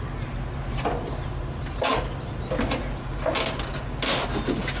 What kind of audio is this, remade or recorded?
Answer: recorded